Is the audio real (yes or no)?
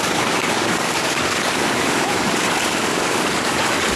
no